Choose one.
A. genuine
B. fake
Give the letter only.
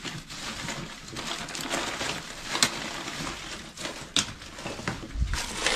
A